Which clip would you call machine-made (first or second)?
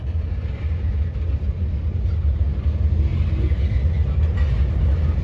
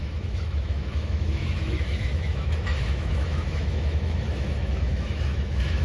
second